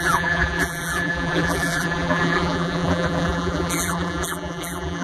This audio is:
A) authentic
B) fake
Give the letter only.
B